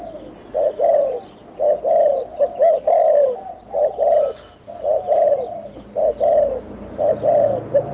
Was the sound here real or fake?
real